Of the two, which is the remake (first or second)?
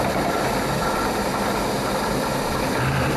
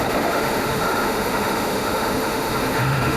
second